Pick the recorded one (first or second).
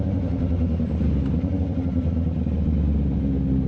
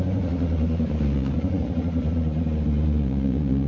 first